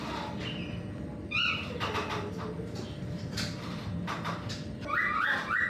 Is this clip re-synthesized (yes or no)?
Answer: no